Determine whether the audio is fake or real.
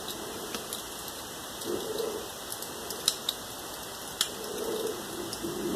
real